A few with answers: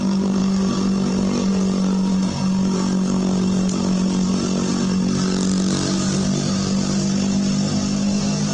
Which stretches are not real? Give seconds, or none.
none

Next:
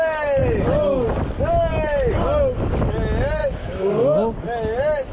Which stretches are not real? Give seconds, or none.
3.4-4.0 (codec, DAC)

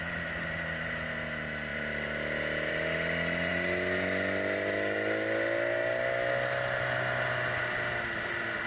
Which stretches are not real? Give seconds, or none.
none

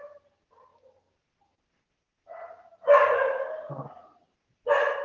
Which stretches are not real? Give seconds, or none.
none

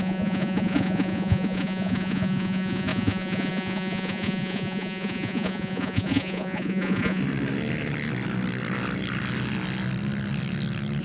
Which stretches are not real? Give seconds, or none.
0.0-7.2 (vocoder, Vocos)

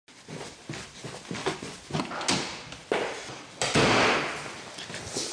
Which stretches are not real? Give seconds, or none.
1.4-2.0 (vocoder, Vocos)